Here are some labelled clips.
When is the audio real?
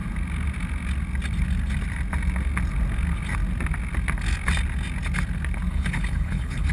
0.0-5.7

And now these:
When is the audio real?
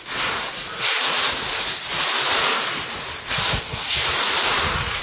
2.1-3.9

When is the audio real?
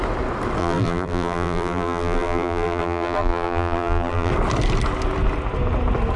0.0-0.6; 4.3-6.2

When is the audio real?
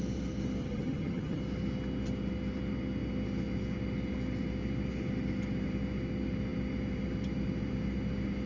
0.0-0.6; 1.4-8.5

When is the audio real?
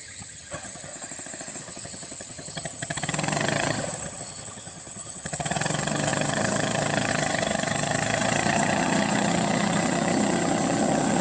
0.9-1.6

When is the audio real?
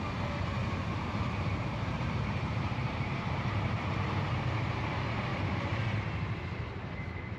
0.0-0.6; 3.9-5.3; 6.0-7.4